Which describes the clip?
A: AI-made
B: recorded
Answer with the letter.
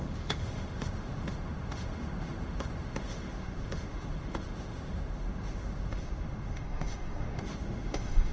A